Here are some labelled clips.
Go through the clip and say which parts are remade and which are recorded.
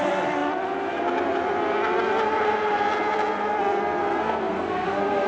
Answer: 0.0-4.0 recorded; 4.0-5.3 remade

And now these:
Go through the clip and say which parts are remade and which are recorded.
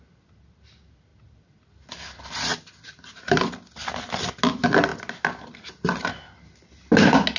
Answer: 0.0-7.4 recorded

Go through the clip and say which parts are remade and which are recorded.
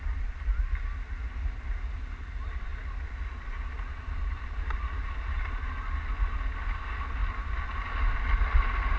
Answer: 0.0-9.0 recorded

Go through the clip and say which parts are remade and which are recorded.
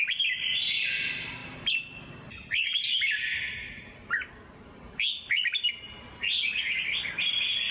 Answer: 0.0-7.7 recorded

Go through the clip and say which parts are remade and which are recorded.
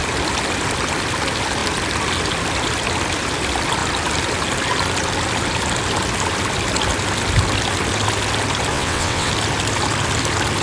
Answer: 0.0-8.7 recorded; 8.7-9.3 remade; 9.3-10.6 recorded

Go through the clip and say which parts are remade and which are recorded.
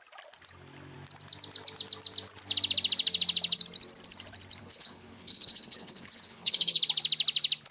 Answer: 0.0-4.6 recorded; 4.6-6.8 remade; 6.8-7.7 recorded